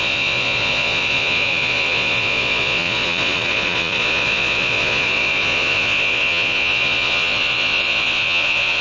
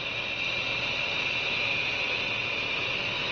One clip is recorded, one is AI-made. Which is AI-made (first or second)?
first